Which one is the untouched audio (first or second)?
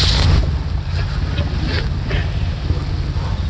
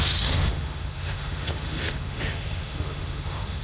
first